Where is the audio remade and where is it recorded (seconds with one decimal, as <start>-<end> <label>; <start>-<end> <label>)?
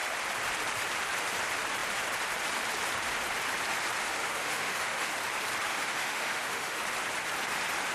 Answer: 0.0-4.2 recorded; 4.2-5.1 remade; 5.1-5.7 recorded; 5.7-6.8 remade; 6.8-7.9 recorded